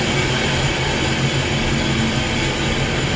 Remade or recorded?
recorded